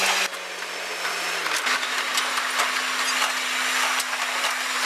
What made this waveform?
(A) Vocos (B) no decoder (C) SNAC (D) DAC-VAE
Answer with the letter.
B